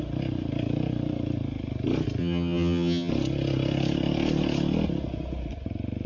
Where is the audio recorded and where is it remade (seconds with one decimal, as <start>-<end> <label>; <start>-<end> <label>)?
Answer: 0.0-2.2 recorded; 2.2-3.1 remade; 3.1-6.1 recorded